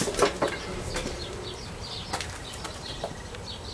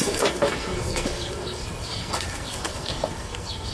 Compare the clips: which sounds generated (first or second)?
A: second